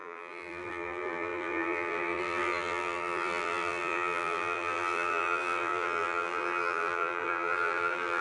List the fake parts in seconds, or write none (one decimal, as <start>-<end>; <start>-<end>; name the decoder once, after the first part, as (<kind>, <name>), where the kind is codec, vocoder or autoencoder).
0.0-8.2 (vocoder, BigVGAN v2)